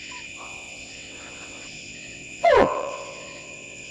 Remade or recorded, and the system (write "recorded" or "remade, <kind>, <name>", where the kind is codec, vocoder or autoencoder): remade, vocoder, WaveNeXt